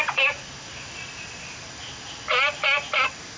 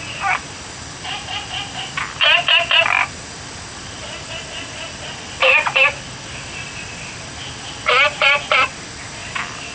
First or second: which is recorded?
first